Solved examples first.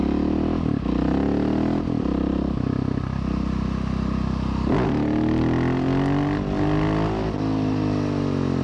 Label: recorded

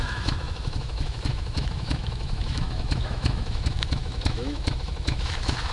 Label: remade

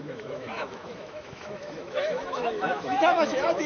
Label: remade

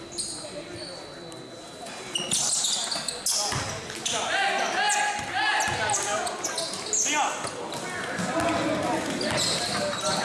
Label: recorded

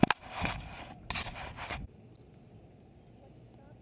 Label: recorded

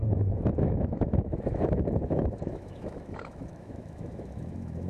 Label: remade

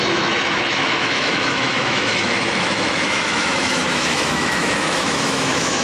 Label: remade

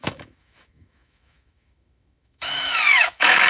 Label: remade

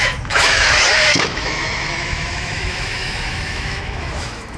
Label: remade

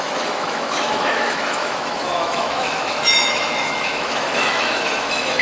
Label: remade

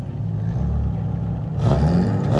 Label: recorded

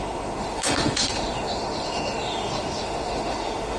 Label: remade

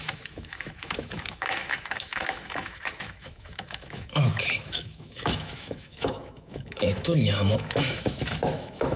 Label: remade